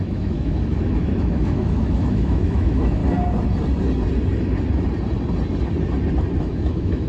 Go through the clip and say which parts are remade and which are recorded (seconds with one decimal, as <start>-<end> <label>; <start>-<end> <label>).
0.0-3.0 remade; 3.0-6.4 recorded; 6.4-7.1 remade

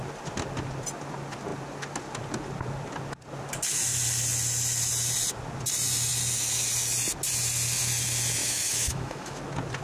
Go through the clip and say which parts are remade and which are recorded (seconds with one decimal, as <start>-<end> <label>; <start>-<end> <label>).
0.0-8.4 recorded; 8.4-9.4 remade; 9.4-9.8 recorded

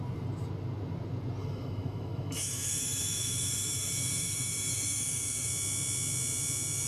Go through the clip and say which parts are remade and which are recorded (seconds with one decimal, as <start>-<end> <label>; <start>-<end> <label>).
0.0-1.4 recorded; 1.4-5.5 remade; 5.5-6.9 recorded

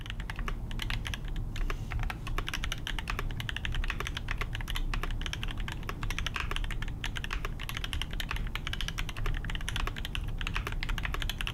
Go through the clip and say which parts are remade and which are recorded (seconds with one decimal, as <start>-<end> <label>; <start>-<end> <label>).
0.0-11.5 recorded

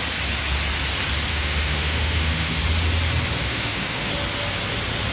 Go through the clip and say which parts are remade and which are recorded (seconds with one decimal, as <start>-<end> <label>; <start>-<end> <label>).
0.0-1.3 recorded; 1.3-2.6 remade; 2.6-3.4 recorded; 3.4-4.1 remade; 4.1-5.1 recorded

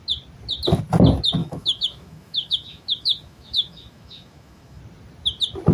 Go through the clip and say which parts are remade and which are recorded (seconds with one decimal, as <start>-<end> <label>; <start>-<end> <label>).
0.0-1.4 recorded; 1.4-4.8 remade; 4.8-5.7 recorded

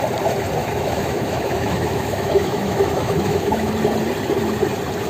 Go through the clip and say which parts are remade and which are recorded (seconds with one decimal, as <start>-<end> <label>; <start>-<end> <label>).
0.0-0.6 recorded; 0.6-3.7 remade; 3.7-5.1 recorded

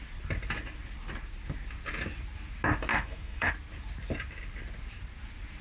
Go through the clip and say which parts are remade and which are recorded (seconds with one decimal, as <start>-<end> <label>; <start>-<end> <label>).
0.0-2.9 recorded; 2.9-3.5 remade; 3.5-5.6 recorded